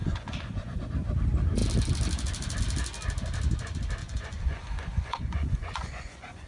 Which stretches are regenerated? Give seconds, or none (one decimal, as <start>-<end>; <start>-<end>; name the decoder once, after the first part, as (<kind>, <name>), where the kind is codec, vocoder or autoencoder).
0.0-0.8 (vocoder, Vocos); 4.0-6.5